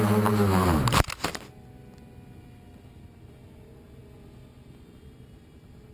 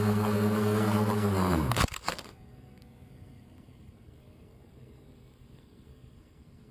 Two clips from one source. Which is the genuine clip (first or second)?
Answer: first